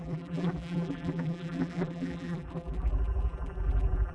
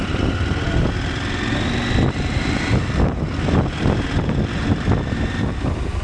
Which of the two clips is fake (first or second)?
first